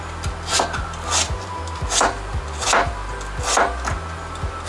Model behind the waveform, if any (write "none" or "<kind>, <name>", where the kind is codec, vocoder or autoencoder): none